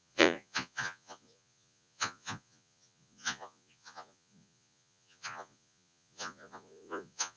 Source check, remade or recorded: remade